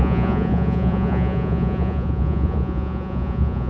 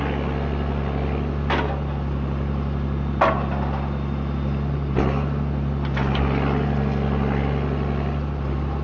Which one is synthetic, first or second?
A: first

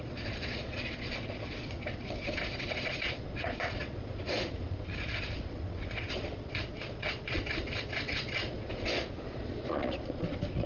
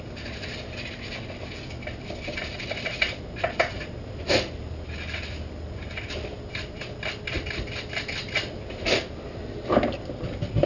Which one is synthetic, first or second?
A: first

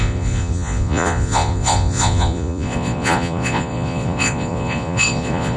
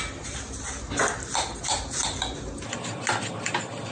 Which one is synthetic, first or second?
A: first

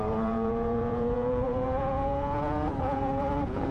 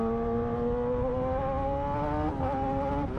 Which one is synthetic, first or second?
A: first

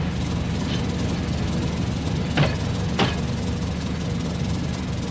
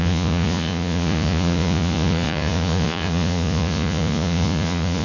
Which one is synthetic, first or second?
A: second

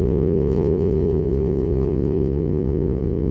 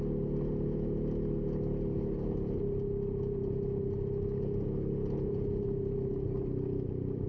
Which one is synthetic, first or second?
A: first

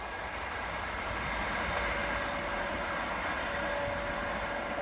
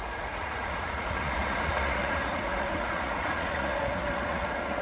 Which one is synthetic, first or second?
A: second